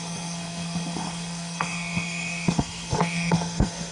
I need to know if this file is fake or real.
fake